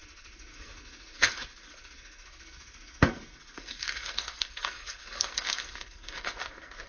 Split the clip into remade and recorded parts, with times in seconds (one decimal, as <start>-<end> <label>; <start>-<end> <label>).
0.0-6.9 remade